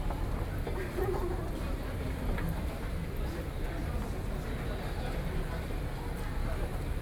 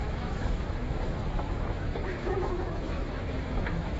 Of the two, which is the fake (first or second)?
second